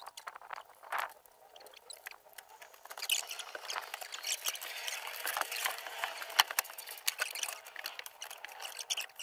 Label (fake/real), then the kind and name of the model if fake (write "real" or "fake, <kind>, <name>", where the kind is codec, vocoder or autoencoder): real